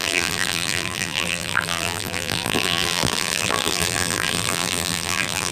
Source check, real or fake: fake